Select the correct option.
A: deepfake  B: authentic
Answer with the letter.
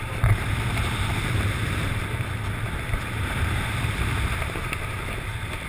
A